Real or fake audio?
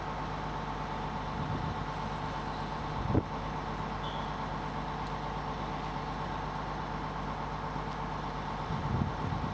real